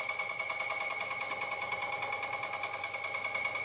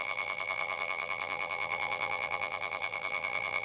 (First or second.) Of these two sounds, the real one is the first